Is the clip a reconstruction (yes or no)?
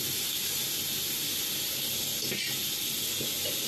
no